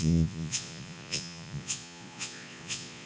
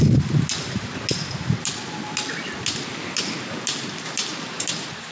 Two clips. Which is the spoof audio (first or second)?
first